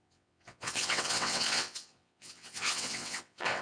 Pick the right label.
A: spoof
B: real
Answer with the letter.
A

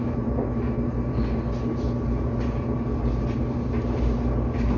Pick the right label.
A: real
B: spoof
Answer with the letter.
A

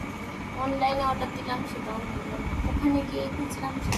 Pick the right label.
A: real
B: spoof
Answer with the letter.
A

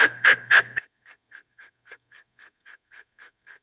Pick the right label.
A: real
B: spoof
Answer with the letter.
B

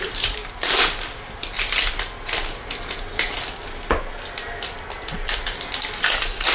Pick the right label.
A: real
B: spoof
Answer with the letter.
A